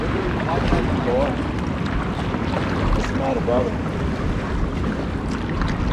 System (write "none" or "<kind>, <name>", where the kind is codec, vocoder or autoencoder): none